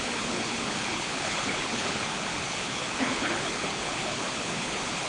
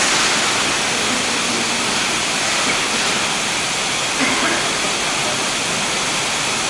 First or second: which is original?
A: second